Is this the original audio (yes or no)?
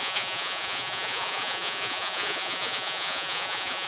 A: no